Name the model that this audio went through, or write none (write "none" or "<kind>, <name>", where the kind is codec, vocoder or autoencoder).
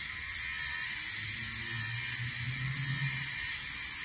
vocoder, BigVGAN v2